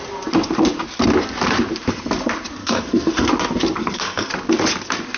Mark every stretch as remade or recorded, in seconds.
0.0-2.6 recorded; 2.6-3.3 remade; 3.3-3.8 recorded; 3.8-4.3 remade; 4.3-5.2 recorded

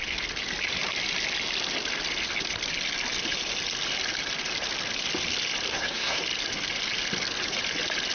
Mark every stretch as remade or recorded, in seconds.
0.0-5.7 recorded; 5.7-6.2 remade; 6.2-8.1 recorded

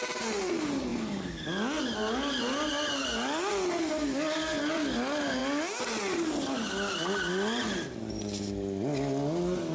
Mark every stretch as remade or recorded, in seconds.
0.0-9.7 recorded

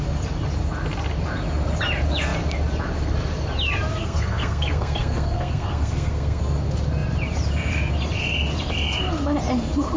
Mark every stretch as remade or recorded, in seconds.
0.0-3.9 recorded; 3.9-6.4 remade; 6.4-10.0 recorded

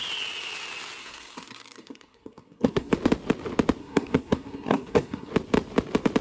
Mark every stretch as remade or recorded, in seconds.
0.0-1.0 recorded; 1.0-2.9 remade; 2.9-3.8 recorded; 3.8-5.3 remade; 5.3-6.2 recorded

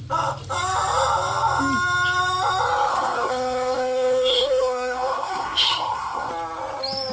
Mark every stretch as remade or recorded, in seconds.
0.0-2.9 recorded; 2.9-6.3 remade; 6.3-7.1 recorded